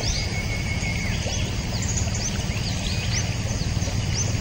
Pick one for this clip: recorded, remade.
recorded